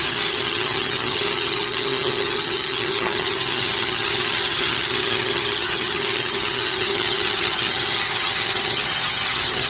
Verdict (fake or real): fake